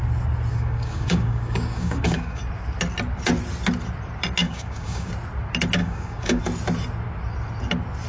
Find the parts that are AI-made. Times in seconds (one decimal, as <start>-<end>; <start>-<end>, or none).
0.5-2.4; 4.4-5.1; 5.8-6.4